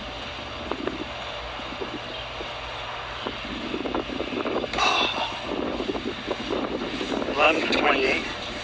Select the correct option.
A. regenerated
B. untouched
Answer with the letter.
B